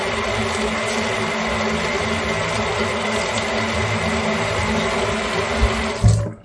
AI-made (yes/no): no